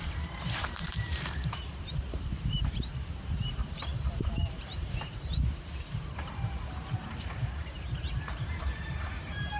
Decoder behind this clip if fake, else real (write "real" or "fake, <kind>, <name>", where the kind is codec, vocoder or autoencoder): fake, vocoder, BigVGAN v2